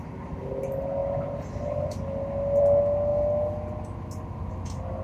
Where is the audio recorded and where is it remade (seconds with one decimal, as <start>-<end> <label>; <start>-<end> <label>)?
0.0-5.0 recorded